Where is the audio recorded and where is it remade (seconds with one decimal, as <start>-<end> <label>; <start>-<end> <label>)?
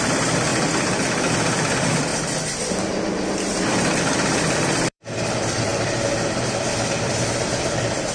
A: 0.0-2.1 remade; 2.1-4.0 recorded; 4.0-8.1 remade